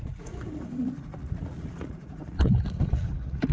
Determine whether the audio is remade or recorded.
remade